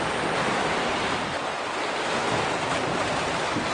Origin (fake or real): real